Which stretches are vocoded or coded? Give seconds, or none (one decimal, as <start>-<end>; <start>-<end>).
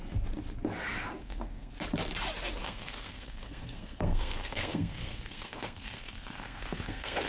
1.2-1.7; 2.6-7.3